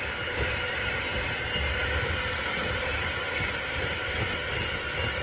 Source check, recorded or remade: remade